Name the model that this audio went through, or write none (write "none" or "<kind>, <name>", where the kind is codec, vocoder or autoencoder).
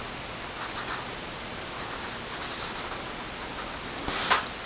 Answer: none